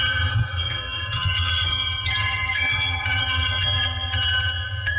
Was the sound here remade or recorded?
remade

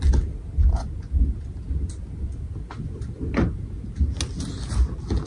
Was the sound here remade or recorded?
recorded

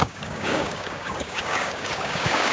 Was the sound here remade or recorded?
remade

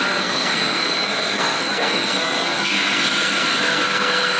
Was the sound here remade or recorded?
remade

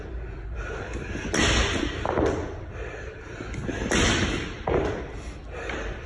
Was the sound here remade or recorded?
recorded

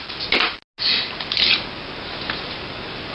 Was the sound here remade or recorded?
recorded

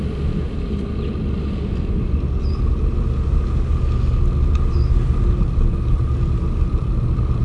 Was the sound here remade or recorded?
recorded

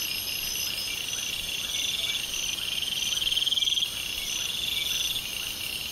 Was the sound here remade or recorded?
recorded